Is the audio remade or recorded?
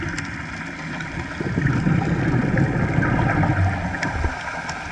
recorded